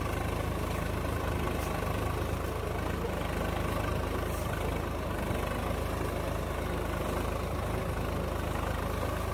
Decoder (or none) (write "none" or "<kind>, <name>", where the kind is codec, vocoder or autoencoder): none